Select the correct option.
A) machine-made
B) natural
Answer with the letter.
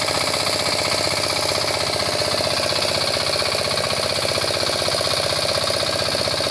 B